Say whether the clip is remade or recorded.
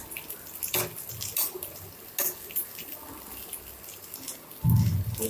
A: recorded